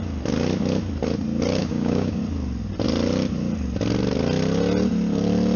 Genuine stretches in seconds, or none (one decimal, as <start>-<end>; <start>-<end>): 0.0-1.6; 2.2-5.6